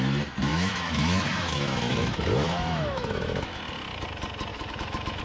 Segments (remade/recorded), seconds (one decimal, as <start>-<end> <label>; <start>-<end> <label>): 0.0-0.5 recorded; 0.5-3.6 remade; 3.6-4.5 recorded; 4.5-5.2 remade